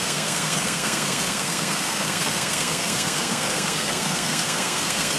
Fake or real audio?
fake